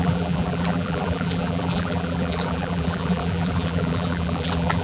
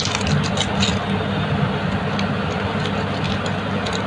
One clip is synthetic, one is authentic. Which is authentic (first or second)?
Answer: second